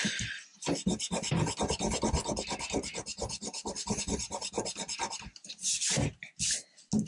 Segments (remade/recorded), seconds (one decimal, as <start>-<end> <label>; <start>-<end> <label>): 0.0-7.1 recorded